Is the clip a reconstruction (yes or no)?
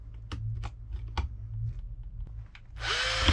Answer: no